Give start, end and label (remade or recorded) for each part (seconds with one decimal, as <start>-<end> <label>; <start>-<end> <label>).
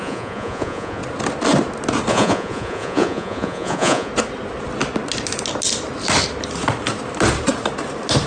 0.0-1.0 remade; 1.0-2.1 recorded; 2.1-4.1 remade; 4.1-8.3 recorded